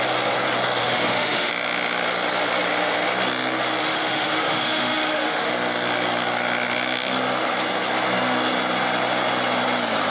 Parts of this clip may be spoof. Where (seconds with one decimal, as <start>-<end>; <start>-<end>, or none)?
0.8-1.5; 3.8-5.5

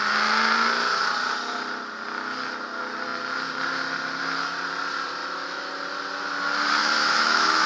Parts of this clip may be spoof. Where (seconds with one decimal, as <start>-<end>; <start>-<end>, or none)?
5.2-5.7; 6.8-7.7

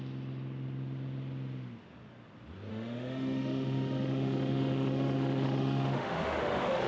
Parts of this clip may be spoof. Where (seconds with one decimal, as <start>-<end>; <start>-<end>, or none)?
2.7-6.9

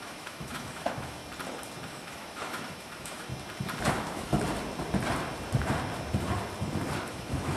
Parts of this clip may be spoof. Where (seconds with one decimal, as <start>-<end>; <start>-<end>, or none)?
0.0-1.2; 1.9-3.3; 3.9-4.3; 7.1-7.6